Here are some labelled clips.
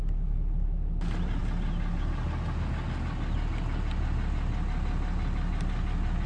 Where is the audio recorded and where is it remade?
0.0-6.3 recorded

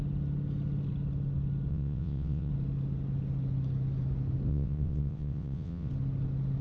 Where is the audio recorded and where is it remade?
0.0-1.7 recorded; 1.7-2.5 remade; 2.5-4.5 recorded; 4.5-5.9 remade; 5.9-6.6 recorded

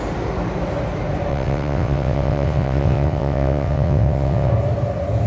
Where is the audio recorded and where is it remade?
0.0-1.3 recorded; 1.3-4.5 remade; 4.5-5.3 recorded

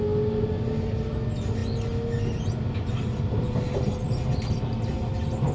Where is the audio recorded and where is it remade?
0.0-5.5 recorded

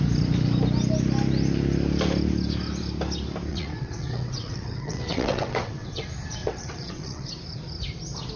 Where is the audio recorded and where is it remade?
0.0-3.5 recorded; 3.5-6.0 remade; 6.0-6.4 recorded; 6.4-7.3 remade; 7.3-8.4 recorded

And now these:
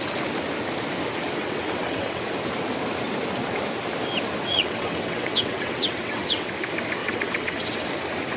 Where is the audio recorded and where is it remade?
0.0-1.4 recorded; 1.4-2.2 remade; 2.2-4.5 recorded; 4.5-6.5 remade; 6.5-7.0 recorded; 7.0-7.9 remade; 7.9-8.4 recorded

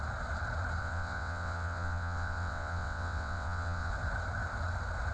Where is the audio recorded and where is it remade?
0.0-0.8 recorded; 0.8-3.9 remade; 3.9-5.1 recorded

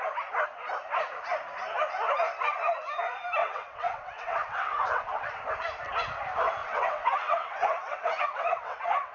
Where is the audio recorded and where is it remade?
0.0-3.4 recorded; 3.4-5.3 remade; 5.3-6.6 recorded; 6.6-9.1 remade